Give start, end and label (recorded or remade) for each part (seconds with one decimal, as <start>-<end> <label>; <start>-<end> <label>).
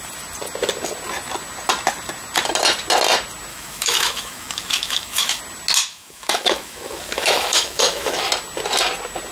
0.0-3.5 recorded; 3.5-5.4 remade; 5.4-5.9 recorded; 5.9-8.3 remade; 8.3-9.3 recorded